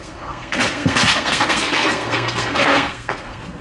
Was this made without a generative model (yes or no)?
no